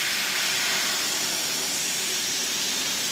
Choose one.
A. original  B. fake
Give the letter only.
A